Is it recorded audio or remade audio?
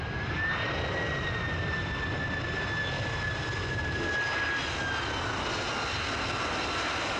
recorded